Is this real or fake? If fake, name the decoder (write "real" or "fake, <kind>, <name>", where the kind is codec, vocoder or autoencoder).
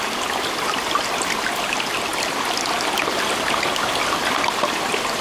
real